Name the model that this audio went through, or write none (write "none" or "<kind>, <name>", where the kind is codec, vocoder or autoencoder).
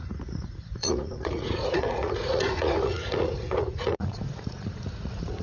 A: vocoder, Vocos